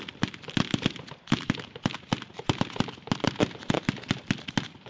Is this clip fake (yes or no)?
no